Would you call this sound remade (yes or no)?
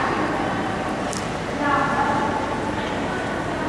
no